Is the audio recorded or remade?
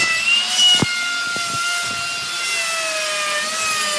recorded